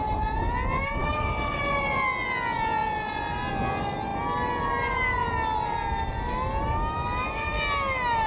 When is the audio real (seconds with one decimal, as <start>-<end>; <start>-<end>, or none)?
0.0-1.0; 1.6-8.3